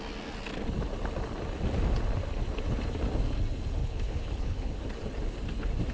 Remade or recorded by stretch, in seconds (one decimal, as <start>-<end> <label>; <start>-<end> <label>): 0.0-3.8 recorded; 3.8-4.8 remade; 4.8-5.9 recorded